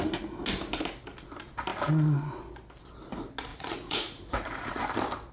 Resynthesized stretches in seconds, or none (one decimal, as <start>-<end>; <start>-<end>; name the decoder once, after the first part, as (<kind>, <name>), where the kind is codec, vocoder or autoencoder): 3.5-4.8 (vocoder, Vocos)